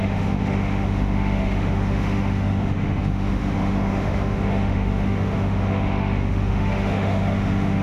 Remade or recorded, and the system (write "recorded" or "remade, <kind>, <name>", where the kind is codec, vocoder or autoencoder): remade, autoencoder, DAC-VAE